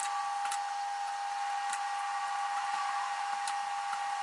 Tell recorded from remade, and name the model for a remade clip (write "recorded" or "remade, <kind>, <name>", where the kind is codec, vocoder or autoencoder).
recorded